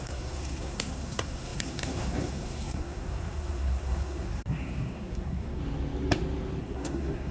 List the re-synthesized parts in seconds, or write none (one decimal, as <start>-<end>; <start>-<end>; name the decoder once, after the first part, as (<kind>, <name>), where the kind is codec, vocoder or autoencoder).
0.0-5.6 (codec, SNAC); 6.6-7.3